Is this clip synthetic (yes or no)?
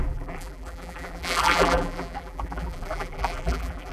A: yes